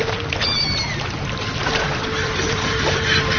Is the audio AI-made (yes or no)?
yes